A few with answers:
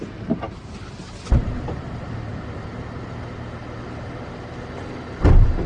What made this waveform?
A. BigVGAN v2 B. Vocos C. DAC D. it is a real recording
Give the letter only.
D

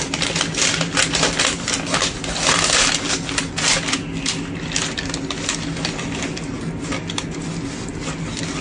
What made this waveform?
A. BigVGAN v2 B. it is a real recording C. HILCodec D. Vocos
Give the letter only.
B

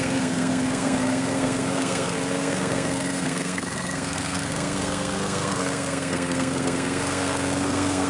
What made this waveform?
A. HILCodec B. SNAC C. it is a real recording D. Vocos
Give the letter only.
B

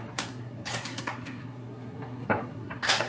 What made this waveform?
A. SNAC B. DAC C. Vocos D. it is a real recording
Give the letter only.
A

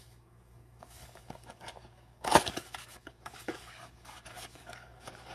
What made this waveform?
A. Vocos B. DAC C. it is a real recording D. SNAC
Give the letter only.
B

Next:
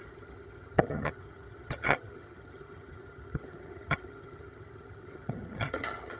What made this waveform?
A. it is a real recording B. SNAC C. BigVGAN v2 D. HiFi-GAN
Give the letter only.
D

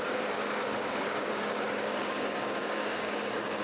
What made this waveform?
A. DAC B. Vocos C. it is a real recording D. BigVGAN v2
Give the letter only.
A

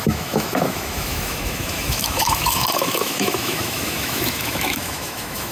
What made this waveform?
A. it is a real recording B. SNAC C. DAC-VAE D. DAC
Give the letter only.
C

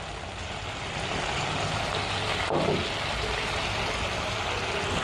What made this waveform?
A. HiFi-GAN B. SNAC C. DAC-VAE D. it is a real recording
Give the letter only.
D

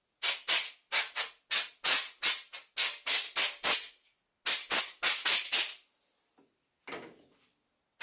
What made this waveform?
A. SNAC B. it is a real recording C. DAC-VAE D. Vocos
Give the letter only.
B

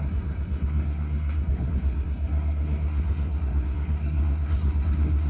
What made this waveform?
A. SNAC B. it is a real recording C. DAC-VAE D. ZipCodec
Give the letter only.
A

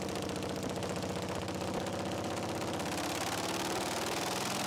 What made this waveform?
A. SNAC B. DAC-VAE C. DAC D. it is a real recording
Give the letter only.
D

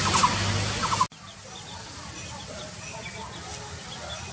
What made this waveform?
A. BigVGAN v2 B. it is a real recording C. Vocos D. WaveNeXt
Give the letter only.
B